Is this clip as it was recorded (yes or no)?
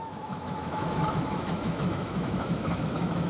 no